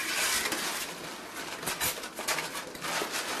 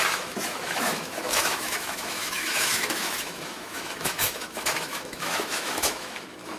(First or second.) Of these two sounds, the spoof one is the second